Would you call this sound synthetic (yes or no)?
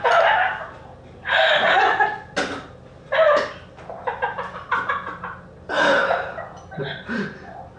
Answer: no